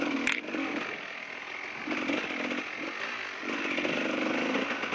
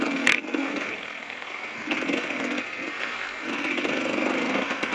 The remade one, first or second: second